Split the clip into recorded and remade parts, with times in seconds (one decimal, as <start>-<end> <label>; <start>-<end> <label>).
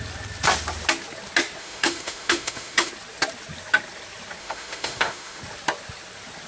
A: 0.0-1.6 recorded; 1.6-2.9 remade; 2.9-4.4 recorded; 4.4-5.4 remade; 5.4-6.5 recorded